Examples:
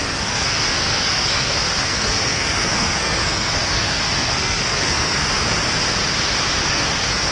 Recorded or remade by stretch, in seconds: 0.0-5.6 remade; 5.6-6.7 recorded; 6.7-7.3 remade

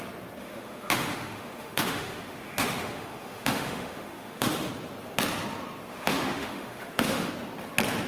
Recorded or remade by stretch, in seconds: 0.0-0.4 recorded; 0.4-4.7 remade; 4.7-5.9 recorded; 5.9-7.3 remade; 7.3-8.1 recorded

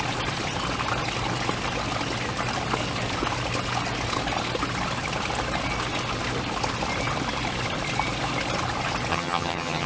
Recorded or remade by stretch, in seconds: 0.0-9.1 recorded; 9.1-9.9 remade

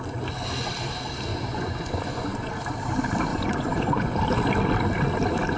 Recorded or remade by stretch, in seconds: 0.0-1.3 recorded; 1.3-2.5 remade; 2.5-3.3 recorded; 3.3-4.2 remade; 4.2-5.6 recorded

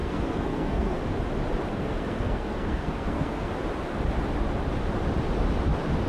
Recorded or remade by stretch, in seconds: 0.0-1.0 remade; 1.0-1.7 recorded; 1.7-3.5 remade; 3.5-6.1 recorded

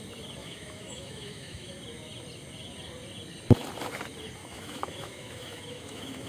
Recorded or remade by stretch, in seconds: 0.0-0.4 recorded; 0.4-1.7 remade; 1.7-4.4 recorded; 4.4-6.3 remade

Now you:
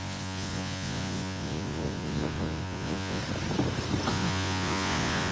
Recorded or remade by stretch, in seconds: 0.0-3.2 remade; 3.2-4.1 recorded; 4.1-5.3 remade